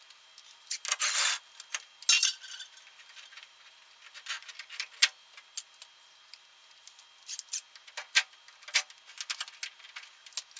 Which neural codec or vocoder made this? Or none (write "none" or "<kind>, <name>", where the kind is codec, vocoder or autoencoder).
none